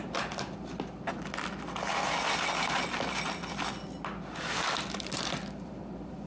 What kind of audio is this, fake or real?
real